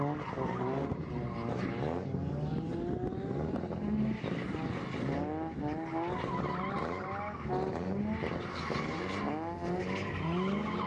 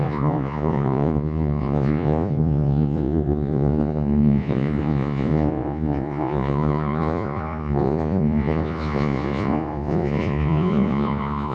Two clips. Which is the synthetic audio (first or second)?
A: second